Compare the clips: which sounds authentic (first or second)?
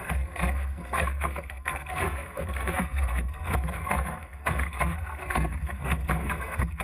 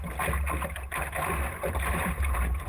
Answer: second